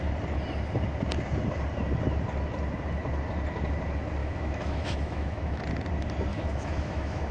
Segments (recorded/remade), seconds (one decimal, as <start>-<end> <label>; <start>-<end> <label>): 0.0-4.2 recorded; 4.2-5.6 remade; 5.6-6.3 recorded; 6.3-7.3 remade